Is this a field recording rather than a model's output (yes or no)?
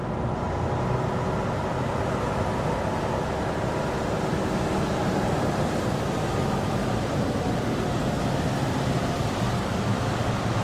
yes